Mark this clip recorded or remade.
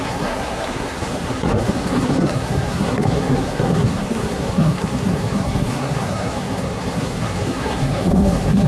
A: remade